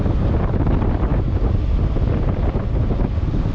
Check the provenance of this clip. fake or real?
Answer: real